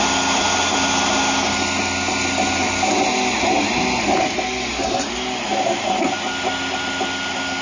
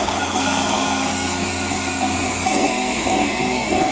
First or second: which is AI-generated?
second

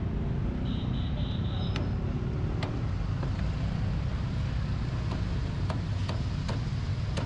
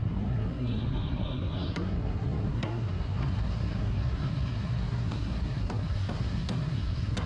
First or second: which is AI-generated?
second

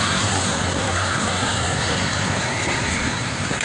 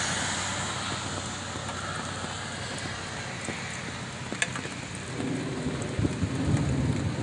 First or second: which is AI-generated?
first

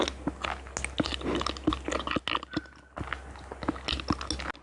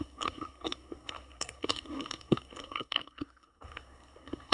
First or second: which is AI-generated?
second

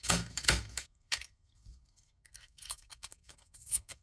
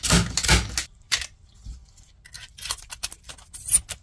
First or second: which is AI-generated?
first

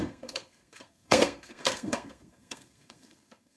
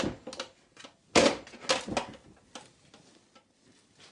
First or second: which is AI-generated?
first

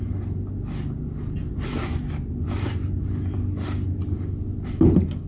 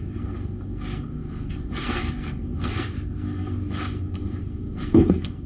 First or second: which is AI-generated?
second